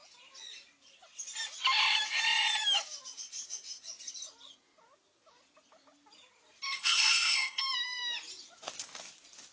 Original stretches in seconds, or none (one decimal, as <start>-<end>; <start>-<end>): 0.0-6.8; 7.6-9.5